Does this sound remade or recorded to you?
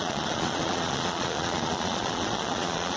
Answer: remade